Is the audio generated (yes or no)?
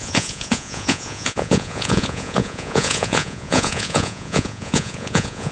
yes